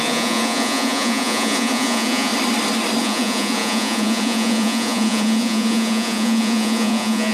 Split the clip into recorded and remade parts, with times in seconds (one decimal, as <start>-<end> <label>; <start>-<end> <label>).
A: 0.0-2.3 remade; 2.3-3.0 recorded; 3.0-7.3 remade